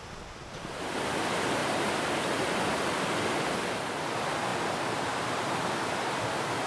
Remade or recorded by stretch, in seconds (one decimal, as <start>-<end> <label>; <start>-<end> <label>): 0.0-1.6 recorded; 1.6-2.1 remade; 2.1-6.7 recorded